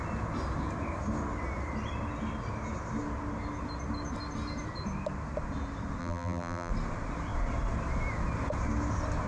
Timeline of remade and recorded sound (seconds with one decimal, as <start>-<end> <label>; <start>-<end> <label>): 0.0-6.0 recorded; 6.0-6.7 remade; 6.7-9.3 recorded